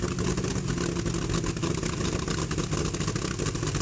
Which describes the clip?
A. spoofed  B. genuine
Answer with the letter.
B